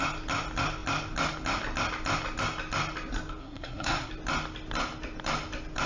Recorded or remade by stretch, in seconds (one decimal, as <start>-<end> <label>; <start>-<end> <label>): 0.0-3.4 recorded; 3.4-4.1 remade; 4.1-5.9 recorded

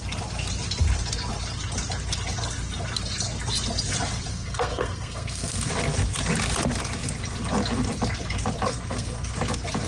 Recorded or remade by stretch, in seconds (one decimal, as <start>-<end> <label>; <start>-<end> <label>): 0.0-4.3 recorded; 4.3-5.7 remade; 5.7-8.7 recorded; 8.7-9.3 remade; 9.3-9.9 recorded

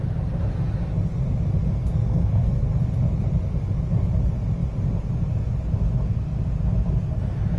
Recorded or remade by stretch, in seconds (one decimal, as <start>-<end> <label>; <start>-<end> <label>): 0.0-1.7 recorded; 1.7-2.8 remade; 2.8-7.6 recorded

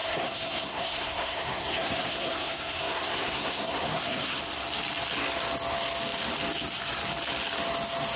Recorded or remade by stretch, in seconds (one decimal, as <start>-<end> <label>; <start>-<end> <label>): 0.0-4.4 remade; 4.4-8.2 recorded

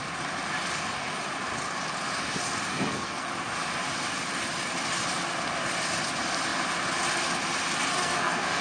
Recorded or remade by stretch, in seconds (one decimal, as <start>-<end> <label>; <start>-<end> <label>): 0.0-2.7 recorded; 2.7-3.3 remade; 3.3-7.9 recorded; 7.9-8.6 remade

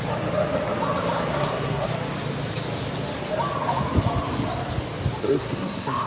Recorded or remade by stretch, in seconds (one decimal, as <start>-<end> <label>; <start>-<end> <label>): 0.0-1.3 recorded; 1.3-1.9 remade; 1.9-5.2 recorded; 5.2-6.1 remade